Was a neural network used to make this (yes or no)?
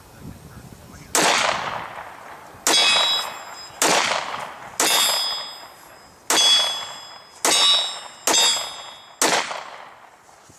no